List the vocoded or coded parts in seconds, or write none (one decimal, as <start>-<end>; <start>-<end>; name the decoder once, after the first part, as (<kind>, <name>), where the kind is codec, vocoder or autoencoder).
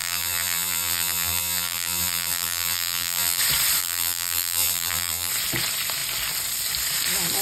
0.0-3.4 (vocoder, BigVGAN v2); 3.8-5.3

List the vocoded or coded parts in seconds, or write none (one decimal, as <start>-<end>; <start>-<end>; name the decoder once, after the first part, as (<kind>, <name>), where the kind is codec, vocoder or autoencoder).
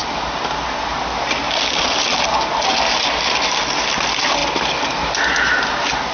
none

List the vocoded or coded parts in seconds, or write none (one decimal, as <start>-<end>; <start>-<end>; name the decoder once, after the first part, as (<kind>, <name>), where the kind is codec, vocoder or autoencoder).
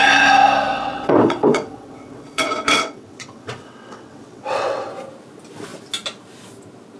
0.7-4.9 (vocoder, WaveNeXt)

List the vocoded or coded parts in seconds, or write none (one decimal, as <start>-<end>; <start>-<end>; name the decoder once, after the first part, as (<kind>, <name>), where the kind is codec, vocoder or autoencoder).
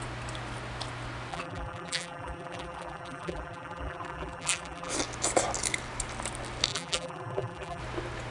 1.3-4.9 (vocoder, BigVGAN v2); 6.7-7.8